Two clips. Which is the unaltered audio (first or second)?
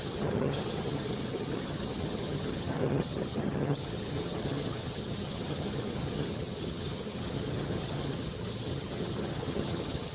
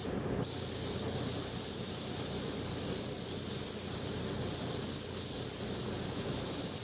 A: second